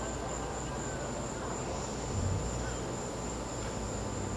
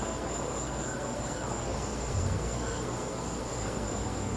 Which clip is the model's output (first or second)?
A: second